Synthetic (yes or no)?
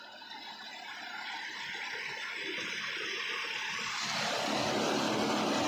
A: no